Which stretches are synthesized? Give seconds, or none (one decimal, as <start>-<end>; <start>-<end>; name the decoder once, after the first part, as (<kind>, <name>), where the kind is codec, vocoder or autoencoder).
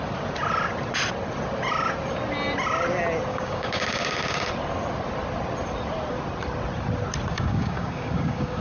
3.3-4.5 (codec, DAC); 7.3-8.6